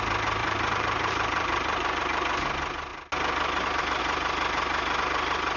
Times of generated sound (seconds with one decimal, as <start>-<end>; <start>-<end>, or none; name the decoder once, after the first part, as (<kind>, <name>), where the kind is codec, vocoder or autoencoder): 0.4-2.0 (vocoder, BigVGAN v2)